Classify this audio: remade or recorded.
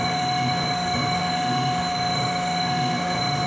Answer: remade